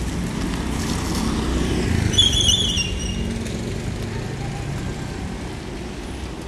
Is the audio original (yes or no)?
yes